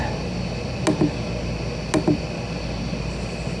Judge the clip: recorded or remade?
recorded